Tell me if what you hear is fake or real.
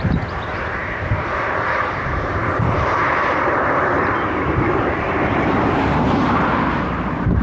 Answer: fake